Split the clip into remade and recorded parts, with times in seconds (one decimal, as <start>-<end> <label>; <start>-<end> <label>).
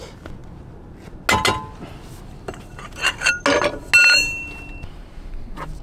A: 0.0-5.8 recorded